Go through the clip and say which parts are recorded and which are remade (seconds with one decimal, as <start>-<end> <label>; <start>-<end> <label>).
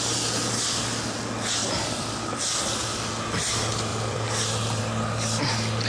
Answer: 0.0-1.6 recorded; 1.6-2.4 remade; 2.4-3.9 recorded; 3.9-4.8 remade; 4.8-5.9 recorded